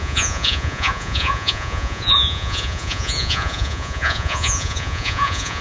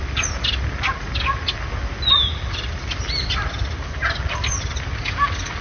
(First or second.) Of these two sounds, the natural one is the second